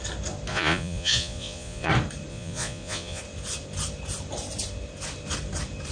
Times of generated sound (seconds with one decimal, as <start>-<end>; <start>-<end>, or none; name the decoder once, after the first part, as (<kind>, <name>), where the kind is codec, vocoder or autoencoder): 0.5-1.9 (vocoder, Vocos); 2.3-3.2